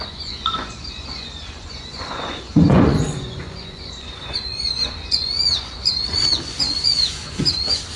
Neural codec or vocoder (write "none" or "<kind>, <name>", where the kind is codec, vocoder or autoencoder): vocoder, Vocos